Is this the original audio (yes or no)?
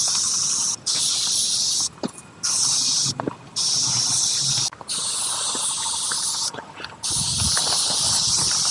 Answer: yes